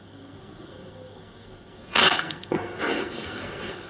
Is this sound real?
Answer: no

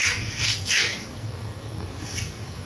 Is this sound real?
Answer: no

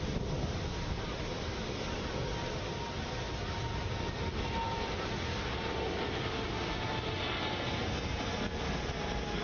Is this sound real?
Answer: yes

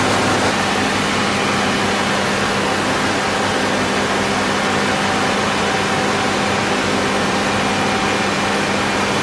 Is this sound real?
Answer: yes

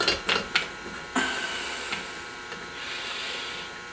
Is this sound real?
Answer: yes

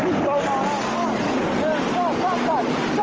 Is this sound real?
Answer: yes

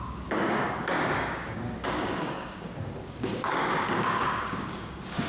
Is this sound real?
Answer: no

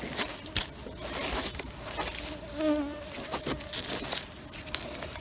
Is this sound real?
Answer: yes